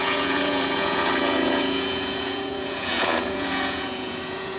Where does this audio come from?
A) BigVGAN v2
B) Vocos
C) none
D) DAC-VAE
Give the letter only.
B